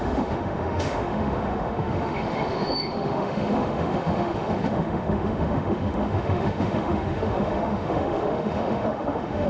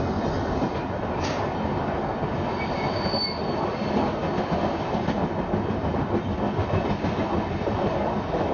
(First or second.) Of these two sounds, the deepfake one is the first